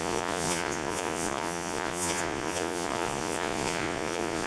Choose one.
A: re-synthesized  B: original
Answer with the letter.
A